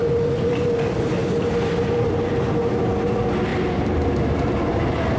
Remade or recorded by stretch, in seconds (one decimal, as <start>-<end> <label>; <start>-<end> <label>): 0.0-1.2 recorded; 1.2-2.7 remade; 2.7-3.5 recorded; 3.5-5.2 remade